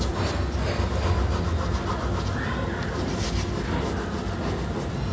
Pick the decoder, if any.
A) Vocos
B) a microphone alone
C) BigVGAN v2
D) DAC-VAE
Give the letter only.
B